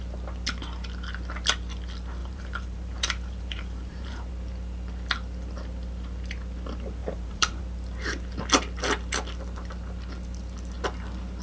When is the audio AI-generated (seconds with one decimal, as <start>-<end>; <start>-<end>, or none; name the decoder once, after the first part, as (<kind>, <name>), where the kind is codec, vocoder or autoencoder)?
2.2-4.3 (vocoder, BigVGAN v2); 7.0-7.6